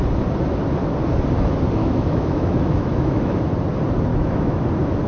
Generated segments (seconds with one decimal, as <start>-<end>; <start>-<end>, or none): 1.8-3.4; 4.1-4.6